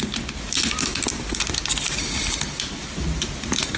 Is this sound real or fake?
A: real